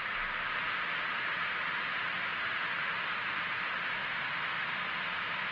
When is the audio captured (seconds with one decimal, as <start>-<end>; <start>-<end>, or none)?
0.0-5.5